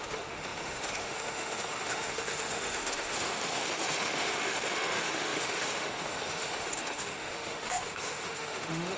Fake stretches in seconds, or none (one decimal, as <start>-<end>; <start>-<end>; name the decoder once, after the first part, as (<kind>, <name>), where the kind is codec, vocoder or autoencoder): 0.0-9.0 (autoencoder, DAC-VAE)

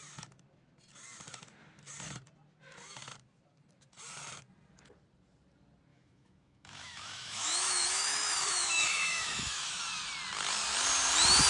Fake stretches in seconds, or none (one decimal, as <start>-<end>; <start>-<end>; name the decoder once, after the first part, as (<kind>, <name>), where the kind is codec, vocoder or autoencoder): 5.9-9.8 (autoencoder, DAC-VAE)

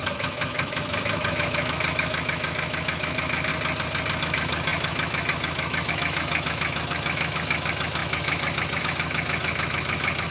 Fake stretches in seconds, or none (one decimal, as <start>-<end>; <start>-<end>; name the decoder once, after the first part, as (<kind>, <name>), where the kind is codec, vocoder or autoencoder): 0.0-3.5 (autoencoder, DAC-VAE); 4.2-10.3

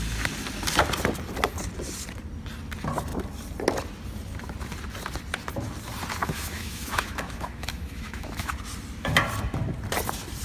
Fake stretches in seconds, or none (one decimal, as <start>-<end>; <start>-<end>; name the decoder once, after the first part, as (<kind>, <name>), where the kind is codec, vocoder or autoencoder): 6.2-8.5 (autoencoder, DAC-VAE)

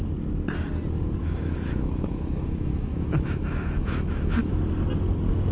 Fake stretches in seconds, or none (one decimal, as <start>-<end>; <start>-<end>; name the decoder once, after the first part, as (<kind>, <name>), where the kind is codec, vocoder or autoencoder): 1.2-4.5 (autoencoder, DAC-VAE)

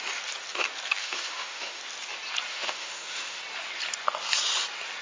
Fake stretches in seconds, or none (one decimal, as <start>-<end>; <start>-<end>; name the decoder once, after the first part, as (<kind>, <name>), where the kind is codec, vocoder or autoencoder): 1.0-1.8 (autoencoder, DAC-VAE); 2.5-3.4

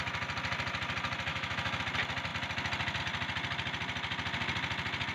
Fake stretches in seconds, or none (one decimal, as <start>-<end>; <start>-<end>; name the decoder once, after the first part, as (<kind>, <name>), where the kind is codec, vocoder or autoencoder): 1.3-1.8 (autoencoder, DAC-VAE)

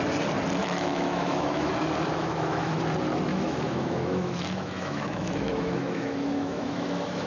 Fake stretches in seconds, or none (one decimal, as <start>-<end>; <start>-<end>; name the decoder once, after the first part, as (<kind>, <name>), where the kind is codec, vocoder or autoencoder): 0.6-1.7 (autoencoder, DAC-VAE); 2.1-2.8; 3.3-7.3